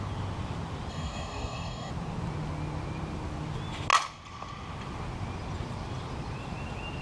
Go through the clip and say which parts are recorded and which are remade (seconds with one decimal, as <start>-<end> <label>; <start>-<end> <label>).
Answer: 0.0-0.9 recorded; 0.9-1.9 remade; 1.9-7.0 recorded